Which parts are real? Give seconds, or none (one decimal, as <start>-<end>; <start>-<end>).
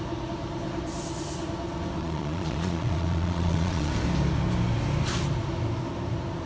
0.0-2.0; 3.9-6.5